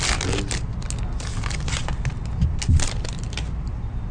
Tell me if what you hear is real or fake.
real